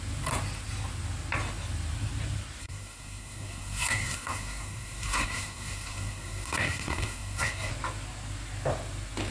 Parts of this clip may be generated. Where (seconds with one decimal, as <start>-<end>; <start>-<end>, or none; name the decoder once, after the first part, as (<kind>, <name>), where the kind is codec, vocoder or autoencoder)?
2.6-7.7 (codec, SNAC)